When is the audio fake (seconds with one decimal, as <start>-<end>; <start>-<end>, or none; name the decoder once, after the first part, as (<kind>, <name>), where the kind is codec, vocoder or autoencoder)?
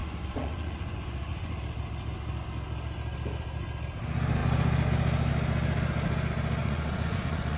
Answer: 0.0-1.6 (vocoder, Vocos); 6.6-7.6